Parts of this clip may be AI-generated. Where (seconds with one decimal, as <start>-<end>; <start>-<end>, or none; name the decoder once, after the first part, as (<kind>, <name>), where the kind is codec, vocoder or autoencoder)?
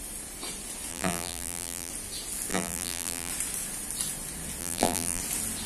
0.9-1.9 (vocoder, BigVGAN v2); 2.5-3.3; 4.6-5.2